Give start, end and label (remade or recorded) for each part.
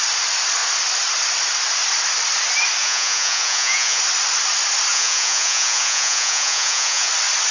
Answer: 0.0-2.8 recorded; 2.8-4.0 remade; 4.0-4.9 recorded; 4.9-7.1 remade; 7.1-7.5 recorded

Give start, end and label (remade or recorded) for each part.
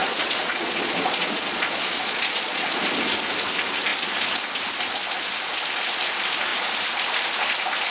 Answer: 0.0-2.8 remade; 2.8-7.9 recorded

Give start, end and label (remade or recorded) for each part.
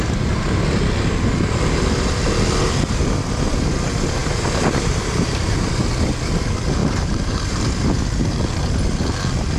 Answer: 0.0-4.2 recorded; 4.2-5.6 remade; 5.6-6.8 recorded; 6.8-7.6 remade; 7.6-9.6 recorded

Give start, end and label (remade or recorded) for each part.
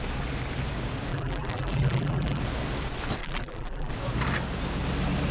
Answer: 0.0-1.1 recorded; 1.1-2.4 remade; 2.4-3.2 recorded; 3.2-3.9 remade; 3.9-5.3 recorded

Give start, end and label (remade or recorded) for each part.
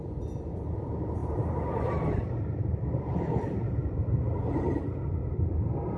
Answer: 0.0-1.2 recorded; 1.2-4.8 remade; 4.8-5.2 recorded; 5.2-6.0 remade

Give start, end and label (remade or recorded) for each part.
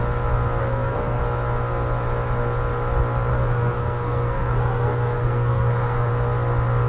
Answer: 0.0-0.6 recorded; 0.6-1.2 remade; 1.2-3.3 recorded; 3.3-6.1 remade; 6.1-6.9 recorded